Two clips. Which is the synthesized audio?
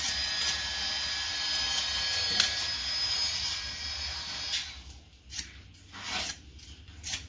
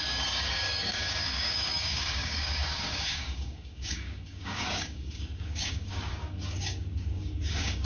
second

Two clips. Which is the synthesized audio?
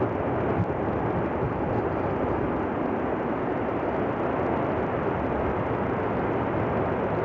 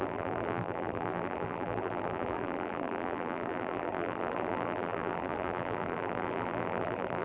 second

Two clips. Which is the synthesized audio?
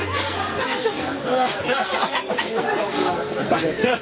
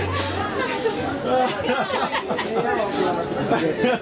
first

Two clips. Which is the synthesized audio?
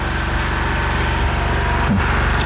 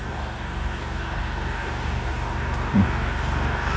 second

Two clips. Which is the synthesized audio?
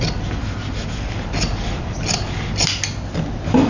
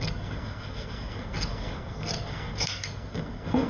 second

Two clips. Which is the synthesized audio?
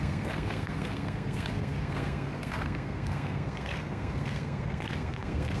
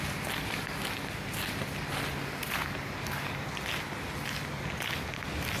first